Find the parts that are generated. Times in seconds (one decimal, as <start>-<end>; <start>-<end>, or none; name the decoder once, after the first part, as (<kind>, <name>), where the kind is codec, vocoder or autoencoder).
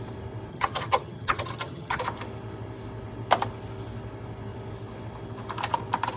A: 0.5-2.0 (vocoder, HiFi-GAN)